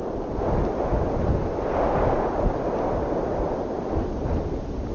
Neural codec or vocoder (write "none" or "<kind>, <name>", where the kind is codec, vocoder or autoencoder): none